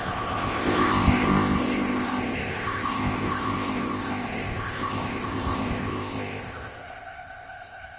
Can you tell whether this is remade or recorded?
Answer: remade